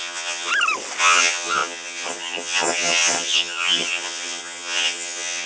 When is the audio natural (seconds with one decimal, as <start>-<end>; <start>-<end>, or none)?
0.5-1.0